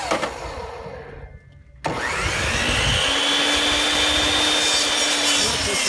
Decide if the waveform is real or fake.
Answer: real